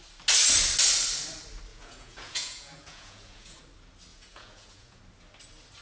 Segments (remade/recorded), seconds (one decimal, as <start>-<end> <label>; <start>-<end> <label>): 0.0-1.7 recorded; 1.7-3.6 remade; 3.6-4.1 recorded; 4.1-5.0 remade; 5.0-5.8 recorded